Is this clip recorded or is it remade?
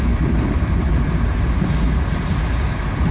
recorded